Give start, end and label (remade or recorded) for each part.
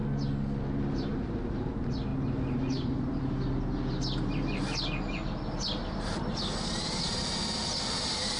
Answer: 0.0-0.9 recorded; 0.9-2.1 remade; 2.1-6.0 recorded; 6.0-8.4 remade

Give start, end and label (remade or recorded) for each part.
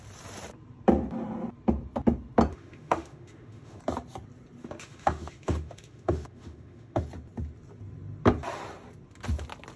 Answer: 0.0-2.5 recorded; 2.5-3.8 remade; 3.8-4.6 recorded; 4.6-7.0 remade; 7.0-9.8 recorded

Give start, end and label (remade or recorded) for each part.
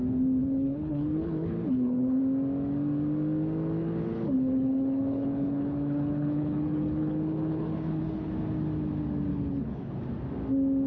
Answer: 0.0-0.4 recorded; 0.4-2.2 remade; 2.2-3.8 recorded; 3.8-8.3 remade; 8.3-9.3 recorded; 9.3-9.9 remade; 9.9-10.9 recorded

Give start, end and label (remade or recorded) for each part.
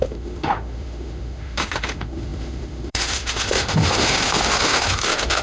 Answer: 0.0-5.4 remade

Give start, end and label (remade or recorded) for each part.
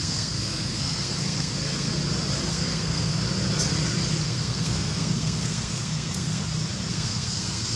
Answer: 0.0-2.0 remade; 2.0-2.5 recorded; 2.5-3.2 remade; 3.2-4.2 recorded; 4.2-6.4 remade; 6.4-6.9 recorded; 6.9-7.8 remade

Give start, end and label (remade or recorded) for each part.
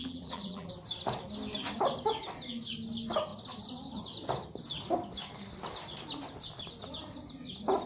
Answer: 0.0-0.7 remade; 0.7-7.9 recorded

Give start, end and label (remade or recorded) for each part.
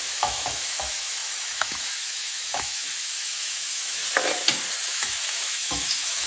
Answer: 0.0-4.0 remade; 4.0-4.8 recorded; 4.8-6.3 remade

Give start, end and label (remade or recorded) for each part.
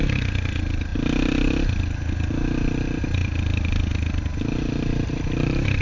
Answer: 0.0-5.8 recorded